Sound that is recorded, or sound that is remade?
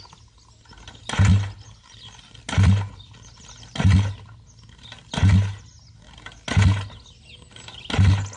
recorded